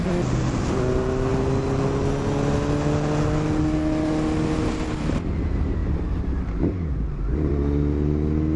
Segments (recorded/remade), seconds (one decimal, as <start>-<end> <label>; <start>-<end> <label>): 0.0-5.8 recorded; 5.8-7.5 remade; 7.5-8.6 recorded